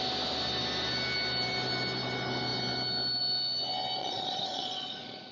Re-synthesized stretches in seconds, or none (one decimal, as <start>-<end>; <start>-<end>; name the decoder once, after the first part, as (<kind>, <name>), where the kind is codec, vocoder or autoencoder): 4.0-5.3 (vocoder, Vocos)